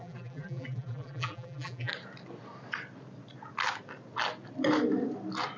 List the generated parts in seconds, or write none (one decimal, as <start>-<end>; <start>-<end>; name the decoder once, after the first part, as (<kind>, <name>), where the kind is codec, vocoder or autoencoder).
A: 0.0-1.9 (vocoder, BigVGAN v2)